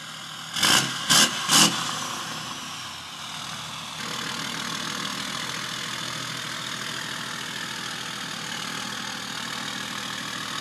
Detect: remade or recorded recorded